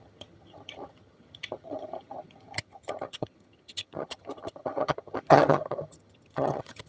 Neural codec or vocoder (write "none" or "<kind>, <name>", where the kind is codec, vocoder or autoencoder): vocoder, HiFi-GAN